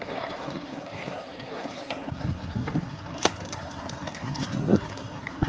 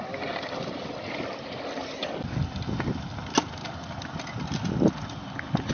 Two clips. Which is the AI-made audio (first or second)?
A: first